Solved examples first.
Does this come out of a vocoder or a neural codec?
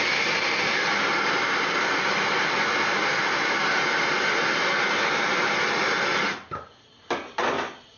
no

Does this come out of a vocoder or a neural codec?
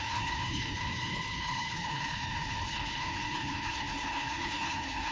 yes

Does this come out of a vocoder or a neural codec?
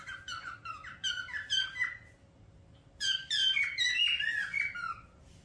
no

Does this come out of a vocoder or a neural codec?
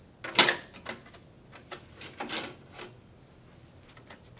no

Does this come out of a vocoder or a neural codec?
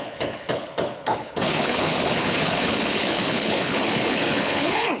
yes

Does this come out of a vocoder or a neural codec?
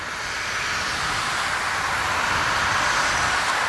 no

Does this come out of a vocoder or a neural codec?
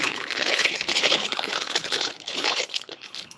yes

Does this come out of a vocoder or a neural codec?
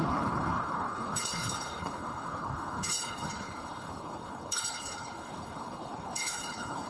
yes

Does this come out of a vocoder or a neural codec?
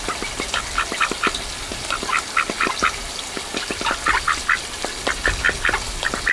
no